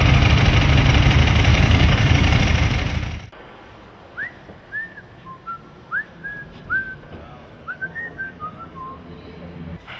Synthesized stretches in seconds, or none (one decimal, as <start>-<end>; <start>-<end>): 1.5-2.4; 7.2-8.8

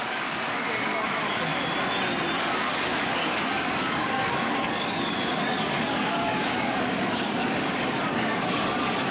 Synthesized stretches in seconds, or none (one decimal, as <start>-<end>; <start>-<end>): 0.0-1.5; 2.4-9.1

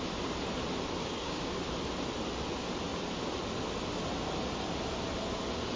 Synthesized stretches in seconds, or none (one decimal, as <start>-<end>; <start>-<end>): 1.0-1.5

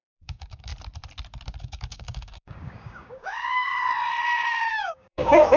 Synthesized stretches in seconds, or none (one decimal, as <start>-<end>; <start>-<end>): 0.0-0.7; 1.6-3.7; 4.7-5.6

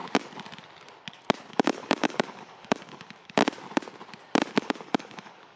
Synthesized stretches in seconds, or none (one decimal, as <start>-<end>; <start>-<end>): 1.5-3.4; 4.5-5.6